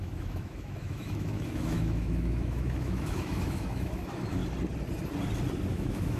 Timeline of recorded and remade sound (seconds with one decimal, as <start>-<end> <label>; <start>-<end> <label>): 0.0-4.4 remade; 4.4-5.7 recorded; 5.7-6.2 remade

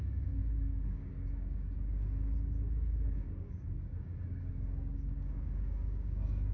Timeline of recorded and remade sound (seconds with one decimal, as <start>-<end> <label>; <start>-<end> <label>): 0.0-6.5 remade

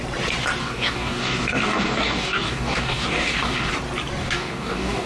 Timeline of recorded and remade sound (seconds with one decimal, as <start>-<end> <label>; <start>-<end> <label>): 0.0-0.6 recorded; 0.6-3.7 remade; 3.7-4.2 recorded; 4.2-5.1 remade

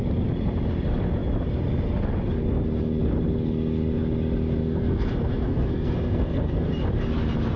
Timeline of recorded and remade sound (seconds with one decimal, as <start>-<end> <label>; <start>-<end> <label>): 0.0-4.6 recorded; 4.6-6.7 remade; 6.7-7.6 recorded

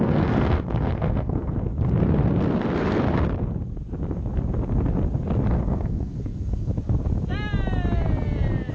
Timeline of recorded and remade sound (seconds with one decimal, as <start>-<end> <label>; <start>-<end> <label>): 0.0-1.7 remade; 1.7-5.5 recorded; 5.5-6.7 remade; 6.7-8.7 recorded

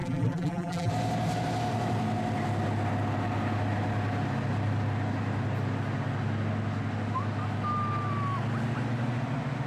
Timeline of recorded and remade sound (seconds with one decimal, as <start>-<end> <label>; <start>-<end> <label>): 0.0-0.9 remade; 0.9-9.7 recorded